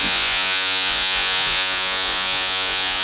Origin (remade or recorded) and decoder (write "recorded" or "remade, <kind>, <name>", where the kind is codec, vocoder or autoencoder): remade, vocoder, Vocos